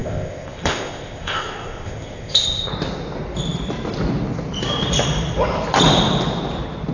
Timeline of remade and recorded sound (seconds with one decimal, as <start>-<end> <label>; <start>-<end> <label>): 0.0-2.7 remade; 2.7-6.9 recorded